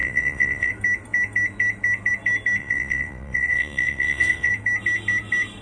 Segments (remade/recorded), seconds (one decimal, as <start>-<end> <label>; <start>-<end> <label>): 0.0-0.7 remade; 0.7-2.6 recorded; 2.6-4.5 remade; 4.5-5.6 recorded